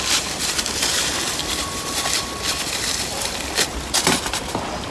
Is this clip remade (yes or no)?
yes